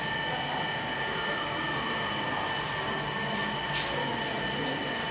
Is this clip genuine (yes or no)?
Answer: yes